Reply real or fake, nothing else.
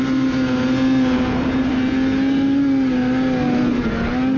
real